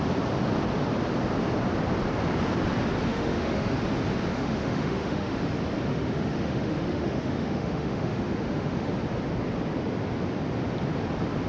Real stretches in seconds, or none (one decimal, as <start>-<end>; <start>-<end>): 0.0-3.1; 3.8-4.3; 5.4-5.9; 8.9-11.5